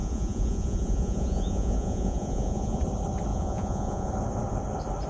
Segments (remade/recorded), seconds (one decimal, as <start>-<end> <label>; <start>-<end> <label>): 0.0-2.8 remade; 2.8-3.3 recorded; 3.3-4.1 remade; 4.1-5.1 recorded